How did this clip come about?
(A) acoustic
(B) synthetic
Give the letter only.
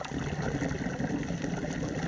A